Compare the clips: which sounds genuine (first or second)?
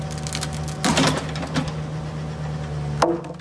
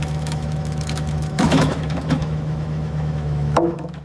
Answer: first